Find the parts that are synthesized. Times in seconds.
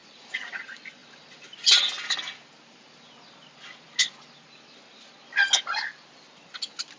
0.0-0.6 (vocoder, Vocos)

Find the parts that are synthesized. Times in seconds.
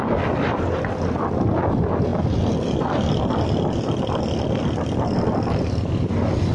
none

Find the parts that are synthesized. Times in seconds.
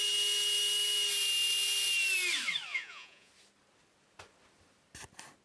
2.7-3.3 (vocoder, Vocos)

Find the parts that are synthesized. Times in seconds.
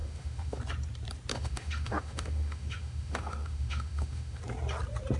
0.0-0.6 (autoencoder, DAC-VAE); 1.3-4.4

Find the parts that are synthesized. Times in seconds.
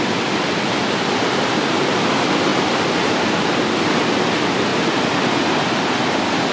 none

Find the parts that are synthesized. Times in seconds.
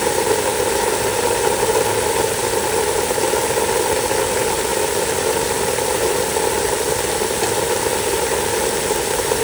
none